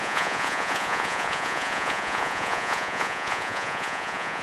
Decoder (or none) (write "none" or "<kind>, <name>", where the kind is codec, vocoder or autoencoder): vocoder, Vocos